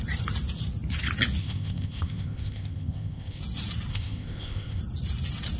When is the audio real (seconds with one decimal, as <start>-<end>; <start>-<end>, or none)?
0.0-1.4; 3.4-3.9; 4.8-5.6